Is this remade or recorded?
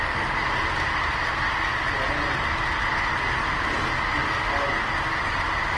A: recorded